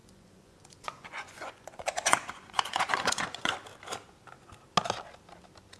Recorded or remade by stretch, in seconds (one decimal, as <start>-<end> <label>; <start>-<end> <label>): 0.0-3.5 remade; 3.5-5.8 recorded